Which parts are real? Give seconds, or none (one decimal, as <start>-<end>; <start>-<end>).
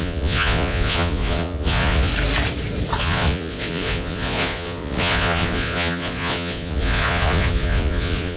2.1-3.0